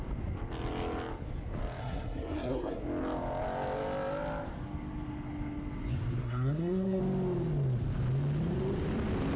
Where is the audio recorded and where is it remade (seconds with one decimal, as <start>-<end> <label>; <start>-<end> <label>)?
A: 0.0-1.8 recorded; 1.8-2.8 remade; 2.8-6.2 recorded; 6.2-7.0 remade; 7.0-9.4 recorded